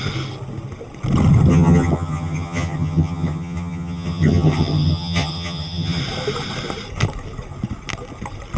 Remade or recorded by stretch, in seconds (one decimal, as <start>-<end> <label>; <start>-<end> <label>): 0.0-1.5 recorded; 1.5-6.0 remade; 6.0-8.6 recorded